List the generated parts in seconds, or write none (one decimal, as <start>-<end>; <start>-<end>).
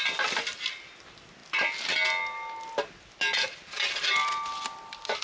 none